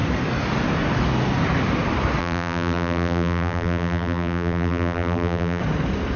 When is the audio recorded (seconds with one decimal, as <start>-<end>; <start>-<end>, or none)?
0.0-2.2; 5.6-6.2